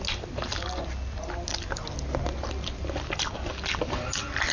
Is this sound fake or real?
real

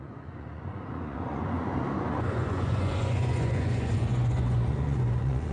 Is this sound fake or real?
fake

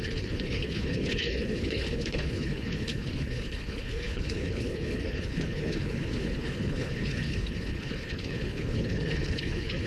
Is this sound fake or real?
fake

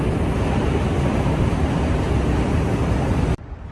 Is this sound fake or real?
real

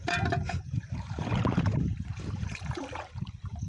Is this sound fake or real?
fake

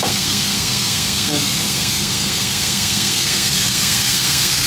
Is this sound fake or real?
fake